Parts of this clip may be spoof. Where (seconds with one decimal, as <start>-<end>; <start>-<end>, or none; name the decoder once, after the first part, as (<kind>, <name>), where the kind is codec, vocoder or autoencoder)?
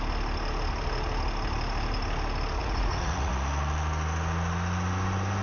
2.6-3.3 (vocoder, Vocos)